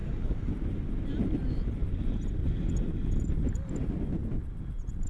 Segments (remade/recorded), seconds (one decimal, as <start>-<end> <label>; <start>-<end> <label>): 0.0-0.5 remade; 0.5-5.1 recorded